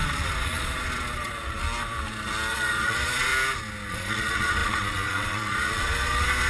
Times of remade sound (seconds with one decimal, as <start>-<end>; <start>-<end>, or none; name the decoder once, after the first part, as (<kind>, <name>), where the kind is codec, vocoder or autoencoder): 0.0-1.6 (vocoder, Vocos); 2.5-3.3; 3.9-6.5